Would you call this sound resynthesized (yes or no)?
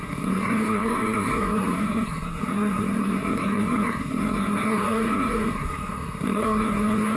yes